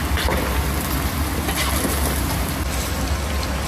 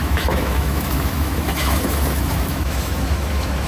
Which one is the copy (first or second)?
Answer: second